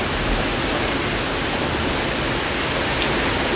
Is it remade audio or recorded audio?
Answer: recorded